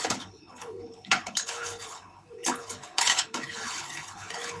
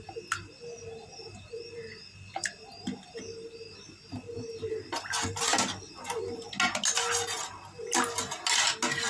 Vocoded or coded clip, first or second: first